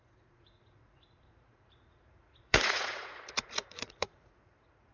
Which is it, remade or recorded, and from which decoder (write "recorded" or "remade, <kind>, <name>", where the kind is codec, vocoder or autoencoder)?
remade, vocoder, Vocos